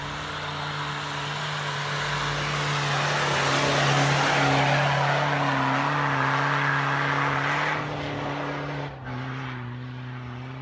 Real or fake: real